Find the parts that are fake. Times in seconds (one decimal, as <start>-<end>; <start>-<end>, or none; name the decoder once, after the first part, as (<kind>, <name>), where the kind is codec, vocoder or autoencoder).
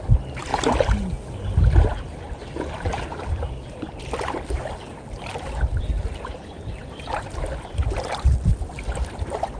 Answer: 0.0-0.5 (vocoder, BigVGAN v2); 2.2-9.6